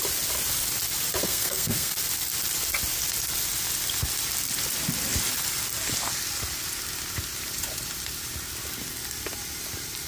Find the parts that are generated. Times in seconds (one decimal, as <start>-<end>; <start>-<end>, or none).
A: 1.2-2.0